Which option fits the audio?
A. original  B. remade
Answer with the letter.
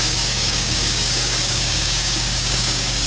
B